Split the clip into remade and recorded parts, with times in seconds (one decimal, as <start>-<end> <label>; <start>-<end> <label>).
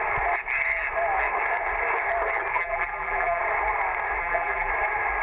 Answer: 0.0-2.5 recorded; 2.5-3.4 remade; 3.4-4.2 recorded; 4.2-4.7 remade; 4.7-5.2 recorded